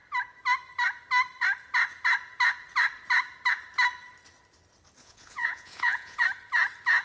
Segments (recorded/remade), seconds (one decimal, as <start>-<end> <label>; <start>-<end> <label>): 0.0-5.0 recorded; 5.0-6.2 remade; 6.2-7.0 recorded